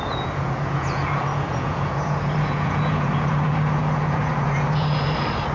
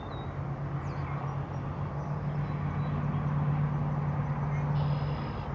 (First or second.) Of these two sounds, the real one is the second